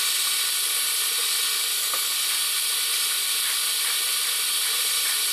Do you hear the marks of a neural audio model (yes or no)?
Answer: no